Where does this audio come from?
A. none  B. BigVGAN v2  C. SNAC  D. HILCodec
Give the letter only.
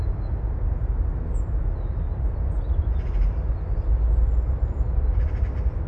A